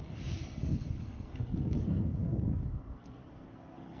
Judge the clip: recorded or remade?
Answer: remade